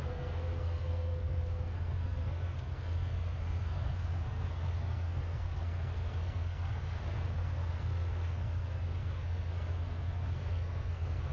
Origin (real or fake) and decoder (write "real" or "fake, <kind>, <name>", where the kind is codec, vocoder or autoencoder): fake, codec, SNAC